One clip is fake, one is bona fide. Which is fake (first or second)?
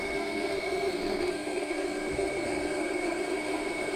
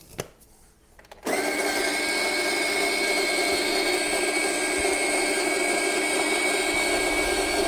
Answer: first